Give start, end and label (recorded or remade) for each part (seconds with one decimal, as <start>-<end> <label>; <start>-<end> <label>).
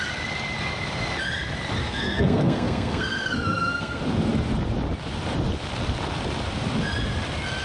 0.0-1.8 recorded; 1.8-4.0 remade; 4.0-7.6 recorded